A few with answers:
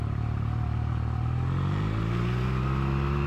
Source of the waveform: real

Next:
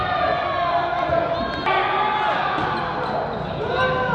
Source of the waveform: real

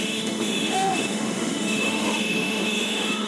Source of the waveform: fake